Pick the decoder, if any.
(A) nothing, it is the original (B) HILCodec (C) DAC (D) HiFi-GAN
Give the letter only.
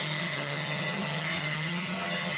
D